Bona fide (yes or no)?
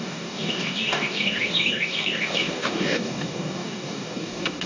no